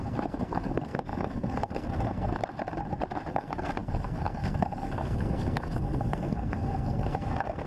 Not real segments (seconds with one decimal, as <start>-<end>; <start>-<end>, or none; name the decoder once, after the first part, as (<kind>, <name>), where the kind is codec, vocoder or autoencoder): 0.0-2.4 (codec, SNAC); 3.3-7.7

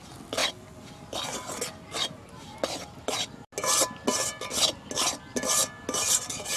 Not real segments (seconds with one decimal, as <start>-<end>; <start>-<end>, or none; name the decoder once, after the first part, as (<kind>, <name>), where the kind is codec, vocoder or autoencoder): none

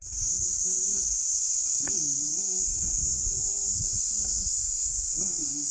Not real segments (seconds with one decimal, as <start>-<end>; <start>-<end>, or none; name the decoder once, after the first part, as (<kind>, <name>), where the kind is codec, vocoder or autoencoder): 0.0-5.7 (codec, SNAC)